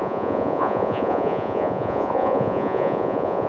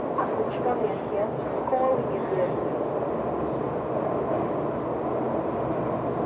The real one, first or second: second